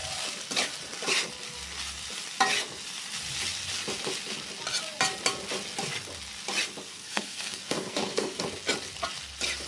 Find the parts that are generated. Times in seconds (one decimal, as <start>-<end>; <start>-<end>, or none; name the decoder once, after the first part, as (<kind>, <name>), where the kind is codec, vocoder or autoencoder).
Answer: 6.9-8.4 (codec, SNAC)